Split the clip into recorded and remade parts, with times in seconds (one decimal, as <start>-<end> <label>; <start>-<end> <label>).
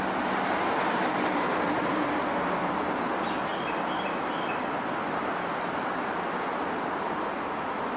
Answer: 0.0-8.0 recorded